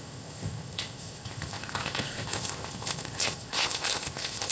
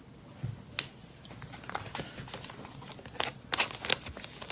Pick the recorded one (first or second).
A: second